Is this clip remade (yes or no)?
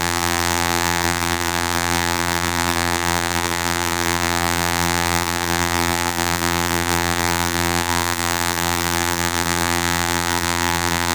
yes